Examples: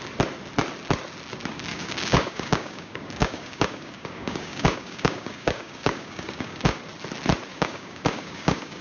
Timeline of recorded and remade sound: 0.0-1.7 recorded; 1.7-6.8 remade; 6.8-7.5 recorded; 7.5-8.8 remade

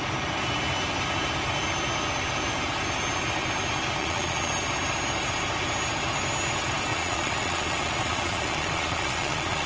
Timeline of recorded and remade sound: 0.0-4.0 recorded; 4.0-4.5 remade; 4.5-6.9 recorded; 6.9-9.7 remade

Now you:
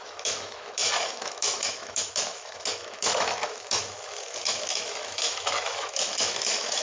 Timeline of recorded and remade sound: 0.0-6.8 remade

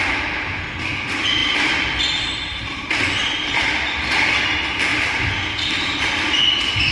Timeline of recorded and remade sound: 0.0-6.9 recorded

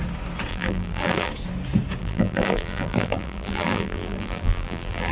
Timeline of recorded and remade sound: 0.0-0.5 recorded; 0.5-1.3 remade; 1.3-2.0 recorded; 2.0-5.1 remade

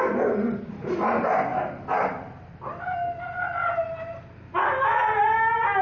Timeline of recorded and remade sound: 0.0-5.8 recorded

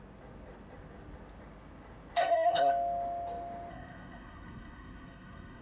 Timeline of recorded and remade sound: 0.0-2.2 recorded; 2.2-2.7 remade; 2.7-3.7 recorded; 3.7-5.6 remade

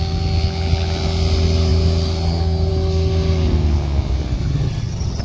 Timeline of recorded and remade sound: 0.0-4.4 recorded; 4.4-5.2 remade